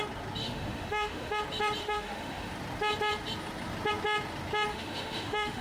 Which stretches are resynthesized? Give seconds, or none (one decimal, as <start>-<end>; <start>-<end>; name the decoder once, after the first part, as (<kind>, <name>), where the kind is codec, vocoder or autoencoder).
0.4-1.4 (autoencoder, DAC-VAE); 1.8-2.5; 4.7-5.6